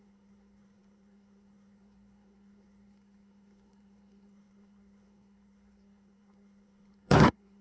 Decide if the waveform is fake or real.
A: fake